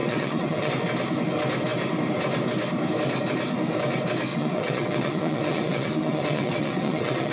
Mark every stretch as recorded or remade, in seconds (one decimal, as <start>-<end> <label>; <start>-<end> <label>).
0.0-0.7 remade; 0.7-4.3 recorded; 4.3-7.3 remade